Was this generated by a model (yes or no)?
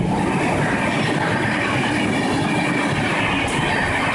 no